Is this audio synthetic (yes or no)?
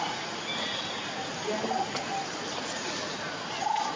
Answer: no